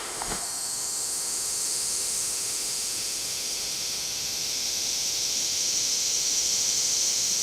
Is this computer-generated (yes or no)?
yes